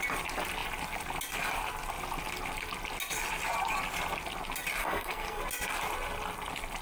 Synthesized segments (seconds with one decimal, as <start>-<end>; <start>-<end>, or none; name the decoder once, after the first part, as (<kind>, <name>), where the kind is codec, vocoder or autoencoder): 4.8-5.4 (codec, SNAC)